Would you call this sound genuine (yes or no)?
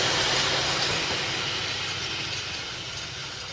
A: yes